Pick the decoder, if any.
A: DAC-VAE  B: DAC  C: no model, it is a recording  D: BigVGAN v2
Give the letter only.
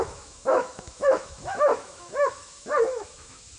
A